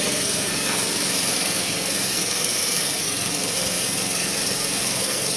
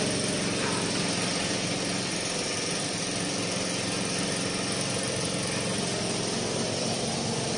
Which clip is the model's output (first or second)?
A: first